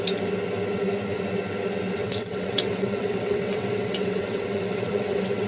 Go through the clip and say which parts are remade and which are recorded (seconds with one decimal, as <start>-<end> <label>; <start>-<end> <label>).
0.0-2.0 recorded; 2.0-5.5 remade